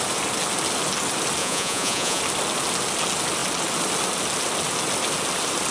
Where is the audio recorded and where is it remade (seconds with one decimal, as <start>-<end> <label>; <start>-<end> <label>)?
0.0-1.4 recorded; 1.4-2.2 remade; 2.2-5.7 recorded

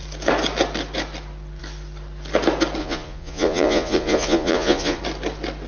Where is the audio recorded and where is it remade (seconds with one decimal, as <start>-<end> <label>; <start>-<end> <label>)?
0.0-2.8 recorded; 2.8-5.0 remade; 5.0-5.7 recorded

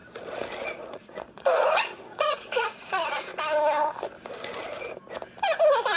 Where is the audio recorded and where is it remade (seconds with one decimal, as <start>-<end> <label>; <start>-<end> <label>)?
0.0-0.6 recorded; 0.6-3.3 remade; 3.3-6.0 recorded

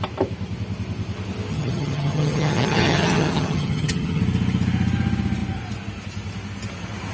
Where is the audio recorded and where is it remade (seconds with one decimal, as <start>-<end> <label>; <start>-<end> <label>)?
0.0-1.5 recorded; 1.5-4.2 remade; 4.2-7.1 recorded

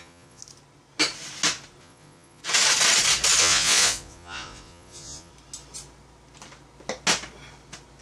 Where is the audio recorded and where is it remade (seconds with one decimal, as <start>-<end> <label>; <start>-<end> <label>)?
0.0-0.4 remade; 0.4-1.8 recorded; 1.8-2.4 remade; 2.4-3.4 recorded; 3.4-5.3 remade; 5.3-8.0 recorded

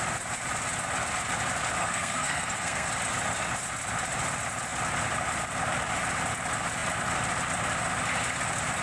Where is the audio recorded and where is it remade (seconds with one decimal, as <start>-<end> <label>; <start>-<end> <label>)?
0.0-1.8 recorded; 1.8-2.9 remade; 2.9-8.8 recorded

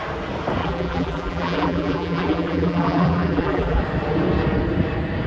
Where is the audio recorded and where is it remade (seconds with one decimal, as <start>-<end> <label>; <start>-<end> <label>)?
0.0-0.6 recorded; 0.6-3.8 remade; 3.8-5.3 recorded